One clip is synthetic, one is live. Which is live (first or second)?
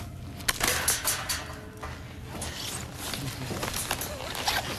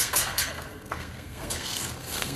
first